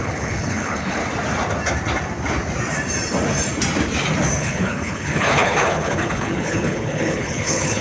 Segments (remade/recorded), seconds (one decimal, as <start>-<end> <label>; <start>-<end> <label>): 0.0-1.0 remade; 1.0-4.4 recorded; 4.4-7.8 remade